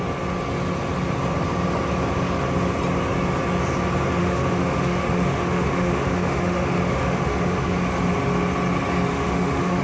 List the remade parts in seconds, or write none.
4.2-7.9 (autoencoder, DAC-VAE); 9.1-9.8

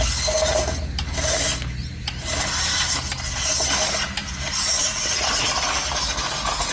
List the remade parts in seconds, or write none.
none

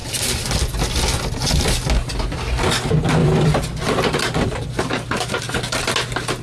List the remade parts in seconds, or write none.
0.0-1.6 (vocoder, BigVGAN v2); 3.2-5.8

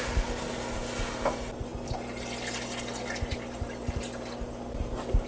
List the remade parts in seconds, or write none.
none

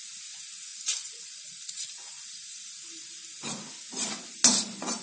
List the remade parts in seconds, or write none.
0.7-3.0 (vocoder, BigVGAN v2)

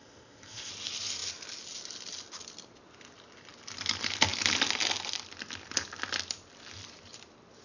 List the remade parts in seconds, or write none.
0.0-0.7 (codec, ZipCodec)

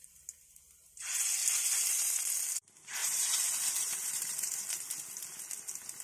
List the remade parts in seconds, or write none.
1.4-2.1 (vocoder, BigVGAN v2); 3.0-4.6